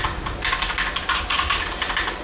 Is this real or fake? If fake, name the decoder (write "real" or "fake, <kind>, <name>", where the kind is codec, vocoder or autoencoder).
real